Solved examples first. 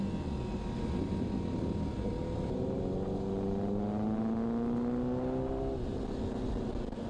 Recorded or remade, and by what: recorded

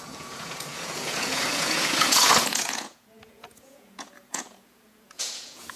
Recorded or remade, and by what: remade, vocoder, Vocos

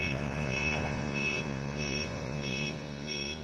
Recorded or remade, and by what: remade, vocoder, Vocos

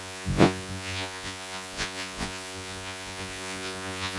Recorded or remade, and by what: remade, vocoder, Vocos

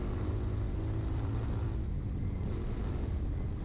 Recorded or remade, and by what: recorded